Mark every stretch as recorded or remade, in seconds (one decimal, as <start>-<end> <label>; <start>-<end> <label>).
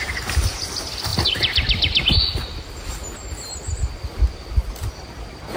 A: 0.0-1.1 recorded; 1.1-4.5 remade; 4.5-5.6 recorded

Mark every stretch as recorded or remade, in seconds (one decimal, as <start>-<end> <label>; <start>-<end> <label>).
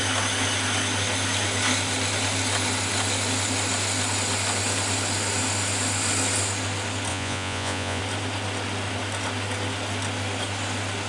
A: 0.0-7.1 recorded; 7.1-8.0 remade; 8.0-11.1 recorded